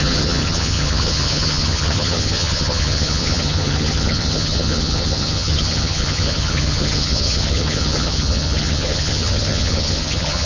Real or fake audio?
fake